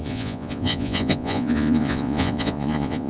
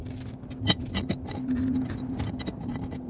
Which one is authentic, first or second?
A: second